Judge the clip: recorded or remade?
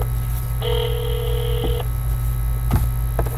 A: recorded